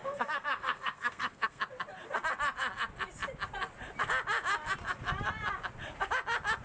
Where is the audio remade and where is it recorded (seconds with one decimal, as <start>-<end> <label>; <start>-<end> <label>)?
0.0-1.6 remade; 1.6-6.6 recorded